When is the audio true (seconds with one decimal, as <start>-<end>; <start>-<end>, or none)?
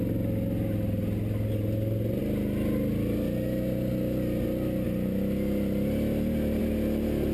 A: 0.0-7.3